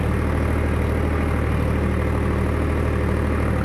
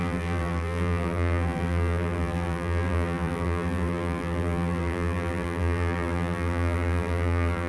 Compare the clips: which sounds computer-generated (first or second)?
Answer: second